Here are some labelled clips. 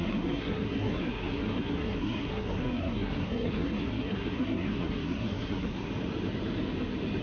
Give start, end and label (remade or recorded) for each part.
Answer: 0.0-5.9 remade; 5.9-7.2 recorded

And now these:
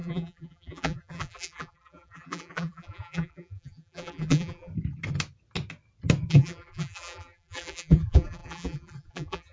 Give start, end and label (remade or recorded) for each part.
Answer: 0.0-4.7 remade; 4.7-6.3 recorded; 6.3-9.5 remade

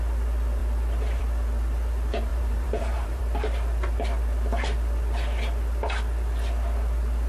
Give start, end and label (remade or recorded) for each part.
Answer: 0.0-2.3 recorded; 2.3-3.2 remade; 3.2-7.3 recorded

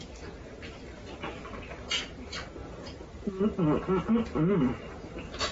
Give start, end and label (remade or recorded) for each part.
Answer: 0.0-5.5 recorded

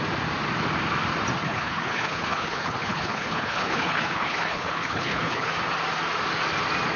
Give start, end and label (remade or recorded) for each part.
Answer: 0.0-1.4 recorded; 1.4-5.5 remade; 5.5-7.0 recorded

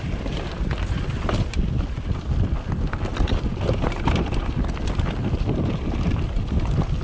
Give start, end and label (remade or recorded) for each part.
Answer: 0.0-1.2 remade; 1.2-3.5 recorded; 3.5-4.5 remade; 4.5-7.0 recorded

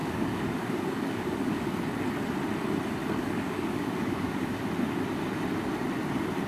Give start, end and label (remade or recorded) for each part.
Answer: 0.0-1.8 remade; 1.8-3.0 recorded; 3.0-4.6 remade; 4.6-6.5 recorded